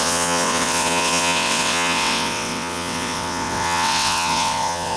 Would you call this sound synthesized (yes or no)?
yes